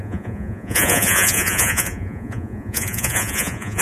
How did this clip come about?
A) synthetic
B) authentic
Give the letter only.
A